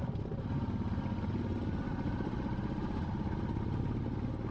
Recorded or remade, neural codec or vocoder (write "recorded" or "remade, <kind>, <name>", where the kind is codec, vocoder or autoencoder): recorded